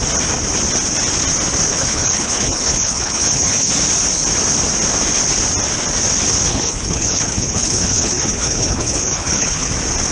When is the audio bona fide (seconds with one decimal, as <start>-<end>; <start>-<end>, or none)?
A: 0.0-1.7; 3.7-6.5; 9.7-10.1